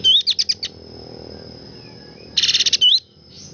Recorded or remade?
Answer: recorded